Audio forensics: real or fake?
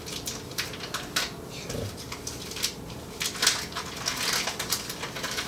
real